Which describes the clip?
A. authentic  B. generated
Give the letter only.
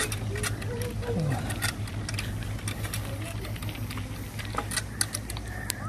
A